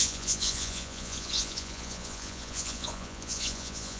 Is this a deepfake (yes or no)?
yes